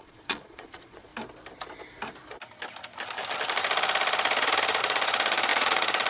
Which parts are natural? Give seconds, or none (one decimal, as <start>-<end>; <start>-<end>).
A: 1.1-4.8